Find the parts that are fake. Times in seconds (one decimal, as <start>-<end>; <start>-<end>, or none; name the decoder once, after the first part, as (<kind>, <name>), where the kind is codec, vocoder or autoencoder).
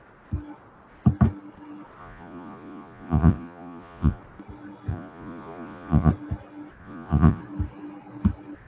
2.0-4.2 (vocoder, Vocos); 4.9-6.1; 6.8-7.4